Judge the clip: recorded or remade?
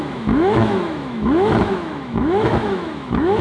remade